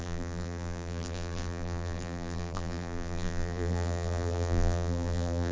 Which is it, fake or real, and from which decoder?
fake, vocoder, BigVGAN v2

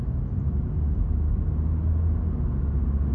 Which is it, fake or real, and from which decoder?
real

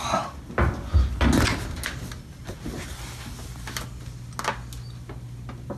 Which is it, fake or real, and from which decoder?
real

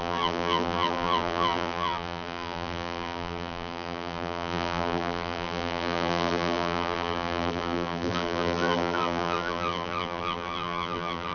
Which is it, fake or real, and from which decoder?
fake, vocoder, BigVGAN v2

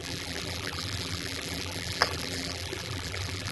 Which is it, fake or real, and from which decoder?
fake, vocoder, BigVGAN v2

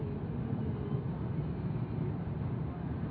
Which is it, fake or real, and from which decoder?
real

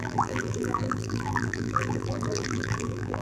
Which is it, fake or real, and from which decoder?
fake, vocoder, BigVGAN v2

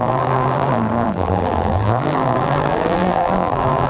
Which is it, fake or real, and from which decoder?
fake, vocoder, BigVGAN v2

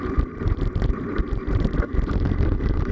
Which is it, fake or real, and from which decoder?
fake, vocoder, BigVGAN v2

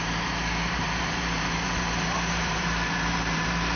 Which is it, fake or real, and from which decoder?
fake, vocoder, BigVGAN v2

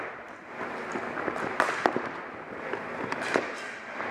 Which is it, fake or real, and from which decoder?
real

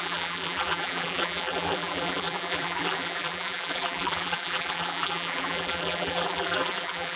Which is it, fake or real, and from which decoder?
fake, vocoder, BigVGAN v2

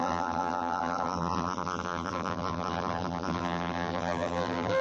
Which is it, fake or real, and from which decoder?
fake, vocoder, BigVGAN v2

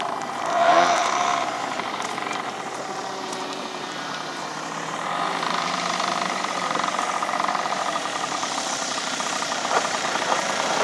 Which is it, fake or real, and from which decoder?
fake, vocoder, BigVGAN v2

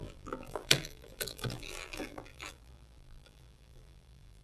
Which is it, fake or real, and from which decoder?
fake, vocoder, BigVGAN v2